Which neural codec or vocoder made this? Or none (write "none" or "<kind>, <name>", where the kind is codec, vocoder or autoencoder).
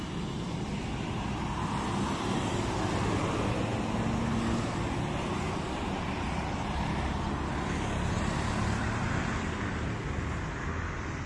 none